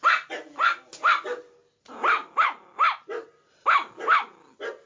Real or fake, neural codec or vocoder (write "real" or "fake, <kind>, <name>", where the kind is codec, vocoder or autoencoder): real